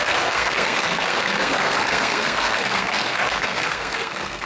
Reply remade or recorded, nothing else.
remade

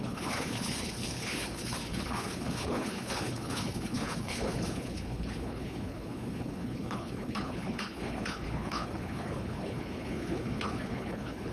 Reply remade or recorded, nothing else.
remade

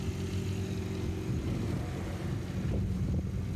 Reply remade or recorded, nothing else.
recorded